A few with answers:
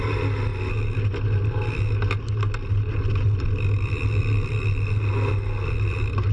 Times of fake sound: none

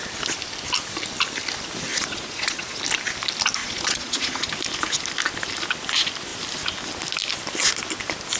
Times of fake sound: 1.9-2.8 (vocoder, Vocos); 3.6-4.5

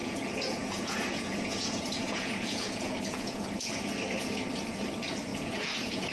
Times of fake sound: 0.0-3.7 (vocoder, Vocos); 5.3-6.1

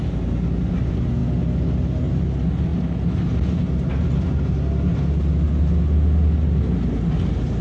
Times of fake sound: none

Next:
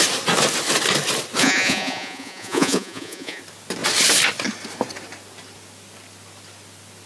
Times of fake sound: 1.4-3.4 (vocoder, Vocos)

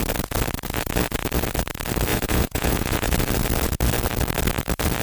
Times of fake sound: 2.1-3.1 (vocoder, Vocos)